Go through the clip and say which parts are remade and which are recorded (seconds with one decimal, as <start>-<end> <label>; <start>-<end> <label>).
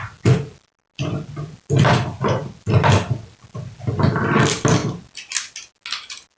0.0-6.4 recorded